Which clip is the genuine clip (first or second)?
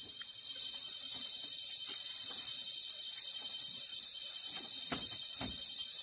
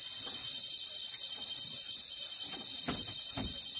second